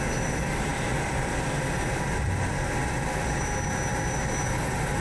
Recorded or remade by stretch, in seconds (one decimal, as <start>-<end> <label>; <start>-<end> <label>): 0.0-5.0 recorded